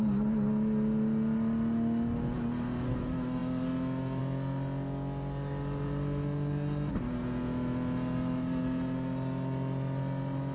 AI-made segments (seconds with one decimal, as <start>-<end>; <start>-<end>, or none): none